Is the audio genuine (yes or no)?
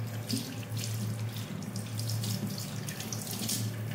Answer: yes